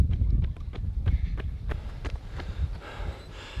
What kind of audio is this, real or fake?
fake